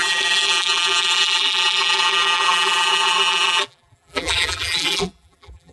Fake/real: fake